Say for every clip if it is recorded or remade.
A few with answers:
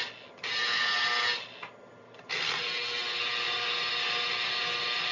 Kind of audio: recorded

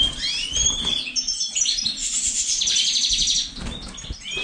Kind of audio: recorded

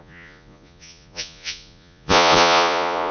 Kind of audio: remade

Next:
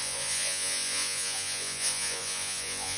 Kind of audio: remade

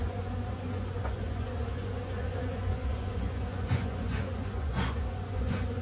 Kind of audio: remade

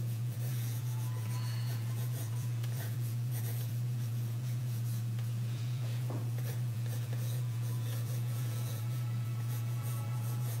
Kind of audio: remade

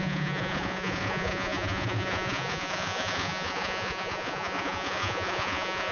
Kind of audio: remade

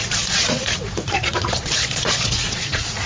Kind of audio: remade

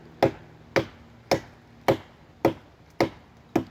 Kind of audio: recorded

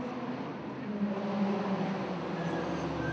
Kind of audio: recorded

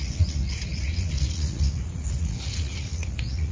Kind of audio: remade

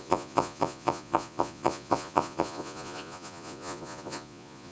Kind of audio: remade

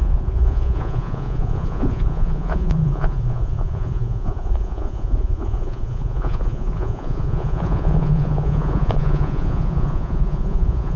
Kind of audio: remade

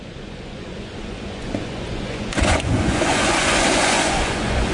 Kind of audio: remade